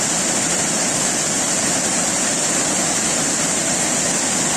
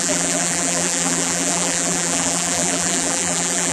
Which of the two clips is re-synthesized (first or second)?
second